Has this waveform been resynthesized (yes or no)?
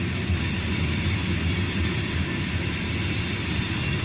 no